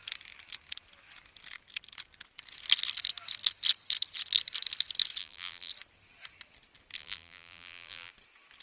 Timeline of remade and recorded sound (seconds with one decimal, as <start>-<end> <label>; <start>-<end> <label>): 0.0-5.2 recorded; 5.2-5.7 remade; 5.7-7.0 recorded; 7.0-8.1 remade; 8.1-8.6 recorded